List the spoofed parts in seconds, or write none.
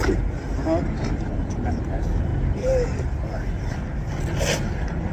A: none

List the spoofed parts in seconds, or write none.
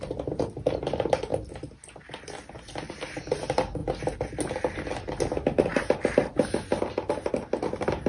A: none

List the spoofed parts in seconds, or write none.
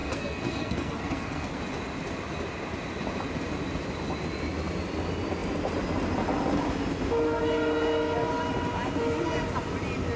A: 0.0-1.6 (codec, SNAC)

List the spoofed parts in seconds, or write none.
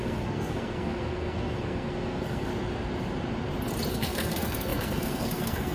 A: 0.0-2.5 (codec, SNAC); 3.9-5.7